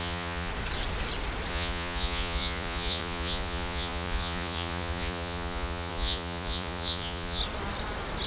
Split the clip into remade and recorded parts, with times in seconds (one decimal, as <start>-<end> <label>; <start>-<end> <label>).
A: 0.0-0.5 remade; 0.5-1.5 recorded; 1.5-7.4 remade; 7.4-8.3 recorded